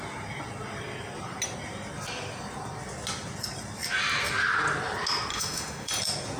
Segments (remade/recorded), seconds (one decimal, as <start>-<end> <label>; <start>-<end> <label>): 0.0-5.3 recorded; 5.3-5.9 remade; 5.9-6.4 recorded